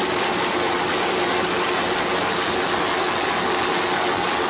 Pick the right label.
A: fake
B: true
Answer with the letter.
B